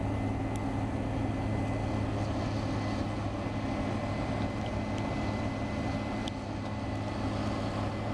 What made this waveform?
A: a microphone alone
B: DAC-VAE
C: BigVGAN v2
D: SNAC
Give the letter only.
A